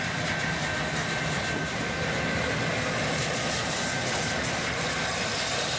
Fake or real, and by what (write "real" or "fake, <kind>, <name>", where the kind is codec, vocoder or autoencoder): real